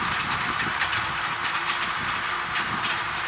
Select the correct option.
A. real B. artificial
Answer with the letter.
A